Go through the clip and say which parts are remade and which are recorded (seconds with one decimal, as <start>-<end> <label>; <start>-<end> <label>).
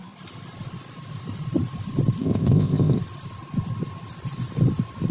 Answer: 0.0-2.2 recorded; 2.2-3.0 remade; 3.0-5.1 recorded